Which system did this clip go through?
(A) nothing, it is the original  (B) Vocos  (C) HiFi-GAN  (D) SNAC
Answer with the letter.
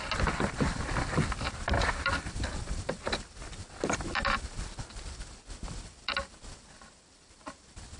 A